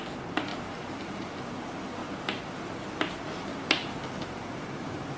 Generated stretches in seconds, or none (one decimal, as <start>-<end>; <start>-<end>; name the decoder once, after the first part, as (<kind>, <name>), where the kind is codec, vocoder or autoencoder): 0.5-1.3 (vocoder, BigVGAN v2); 3.5-4.0